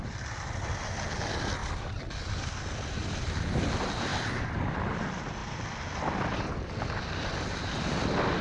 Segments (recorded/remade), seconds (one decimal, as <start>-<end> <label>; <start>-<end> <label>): 0.0-1.6 recorded; 1.6-2.4 remade; 2.4-4.1 recorded; 4.1-4.8 remade; 4.8-8.4 recorded